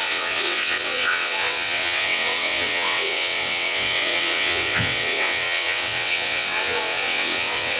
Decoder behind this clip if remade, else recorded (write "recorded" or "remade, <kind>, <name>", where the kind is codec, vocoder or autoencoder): remade, vocoder, WaveNeXt